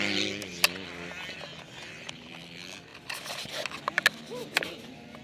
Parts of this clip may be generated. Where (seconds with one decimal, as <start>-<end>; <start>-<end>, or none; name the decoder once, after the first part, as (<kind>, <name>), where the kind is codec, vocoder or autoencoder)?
4.4-5.2 (vocoder, BigVGAN v2)